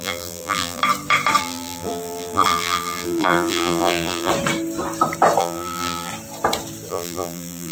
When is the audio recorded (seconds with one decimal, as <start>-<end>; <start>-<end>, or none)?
0.8-1.4; 4.3-5.4; 6.1-6.9